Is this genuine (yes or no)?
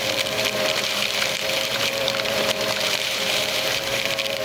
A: no